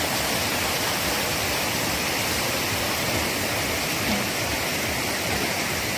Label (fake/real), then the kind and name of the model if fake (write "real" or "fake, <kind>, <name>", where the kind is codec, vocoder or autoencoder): real